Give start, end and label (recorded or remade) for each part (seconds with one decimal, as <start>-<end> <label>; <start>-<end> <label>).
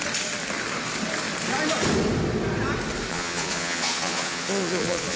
0.0-3.1 recorded; 3.1-5.2 remade